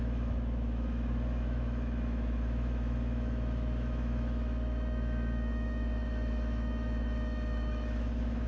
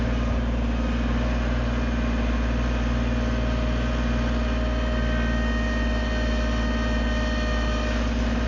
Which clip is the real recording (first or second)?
second